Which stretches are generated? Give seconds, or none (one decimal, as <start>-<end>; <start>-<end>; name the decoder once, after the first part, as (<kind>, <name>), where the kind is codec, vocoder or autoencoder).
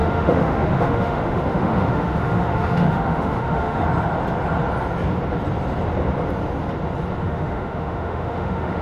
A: 0.0-3.8 (autoencoder, DAC-VAE); 7.2-8.8